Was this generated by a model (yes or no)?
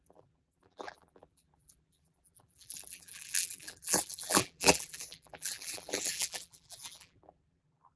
yes